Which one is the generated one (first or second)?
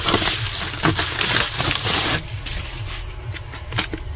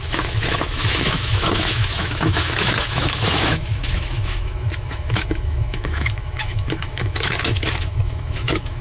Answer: second